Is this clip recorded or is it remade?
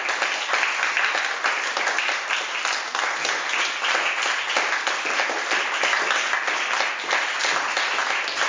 recorded